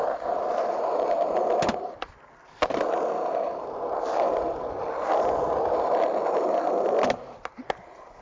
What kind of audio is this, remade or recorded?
recorded